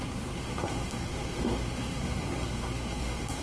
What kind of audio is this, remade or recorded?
remade